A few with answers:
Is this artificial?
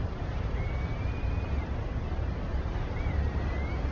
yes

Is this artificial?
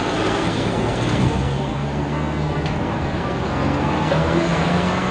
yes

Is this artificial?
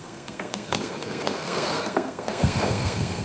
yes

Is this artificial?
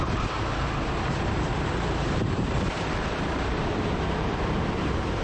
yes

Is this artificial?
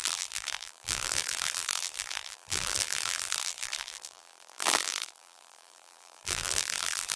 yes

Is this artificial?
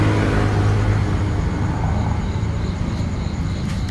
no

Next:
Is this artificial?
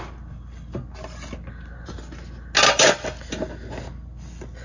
no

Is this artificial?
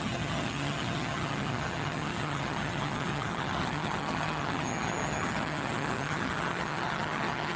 yes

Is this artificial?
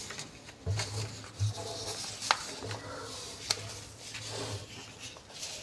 no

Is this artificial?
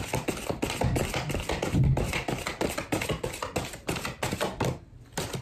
no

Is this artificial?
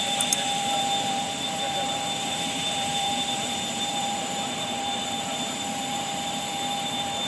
yes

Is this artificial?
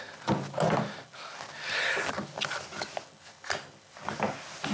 no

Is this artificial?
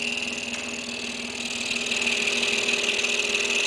no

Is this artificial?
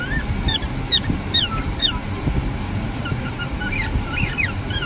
no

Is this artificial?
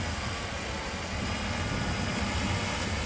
no